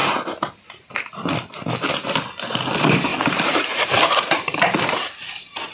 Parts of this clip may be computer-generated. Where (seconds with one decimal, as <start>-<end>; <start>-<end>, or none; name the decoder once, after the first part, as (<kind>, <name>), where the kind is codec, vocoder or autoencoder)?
3.1-5.7 (vocoder, BigVGAN v2)